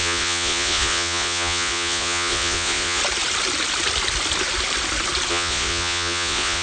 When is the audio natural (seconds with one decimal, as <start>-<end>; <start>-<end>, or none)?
3.0-5.3